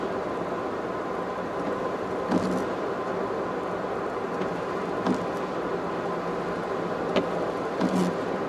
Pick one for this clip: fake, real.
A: real